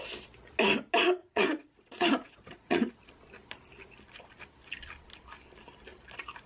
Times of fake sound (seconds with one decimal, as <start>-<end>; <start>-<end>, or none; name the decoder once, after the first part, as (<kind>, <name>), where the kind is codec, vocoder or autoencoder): 1.2-2.9 (vocoder, Vocos)